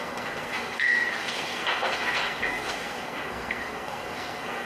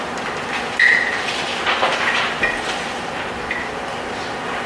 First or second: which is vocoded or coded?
first